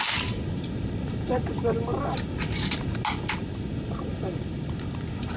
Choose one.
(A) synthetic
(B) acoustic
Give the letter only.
B